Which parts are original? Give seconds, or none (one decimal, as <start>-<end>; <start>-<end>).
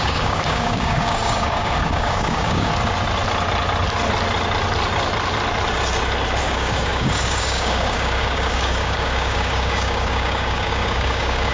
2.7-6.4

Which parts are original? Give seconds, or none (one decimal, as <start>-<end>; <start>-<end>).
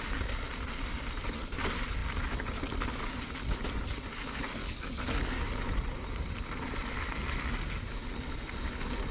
0.0-4.6; 5.4-9.1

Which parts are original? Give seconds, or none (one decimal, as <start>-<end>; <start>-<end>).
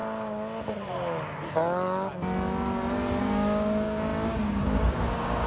0.0-3.2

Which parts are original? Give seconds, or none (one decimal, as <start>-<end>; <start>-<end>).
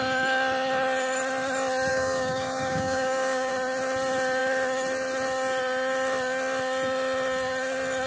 0.0-1.9; 3.5-8.1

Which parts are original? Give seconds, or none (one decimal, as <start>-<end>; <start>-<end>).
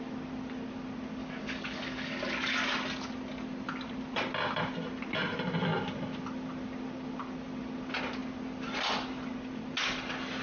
0.0-1.2; 2.2-10.4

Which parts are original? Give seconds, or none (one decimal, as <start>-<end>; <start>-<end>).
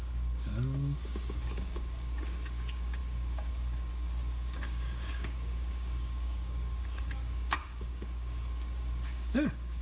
none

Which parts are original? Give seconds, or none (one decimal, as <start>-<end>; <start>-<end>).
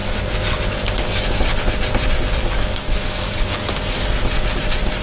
0.0-2.4; 3.6-5.0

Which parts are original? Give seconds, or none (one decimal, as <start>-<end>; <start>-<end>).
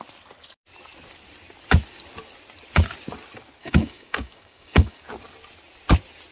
0.0-3.6; 5.0-6.3